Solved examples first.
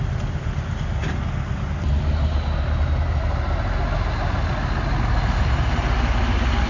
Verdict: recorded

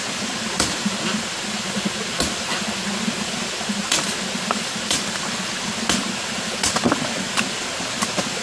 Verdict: recorded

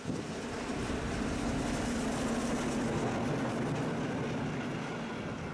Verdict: recorded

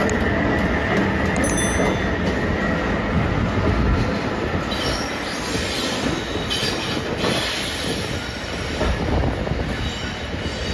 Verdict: recorded